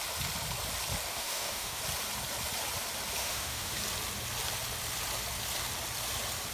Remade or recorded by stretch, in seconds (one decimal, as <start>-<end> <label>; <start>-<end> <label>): 0.0-1.1 recorded; 1.1-1.8 remade; 1.8-3.2 recorded; 3.2-3.8 remade; 3.8-6.5 recorded